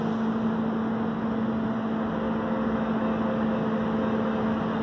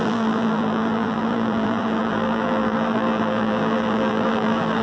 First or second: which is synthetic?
second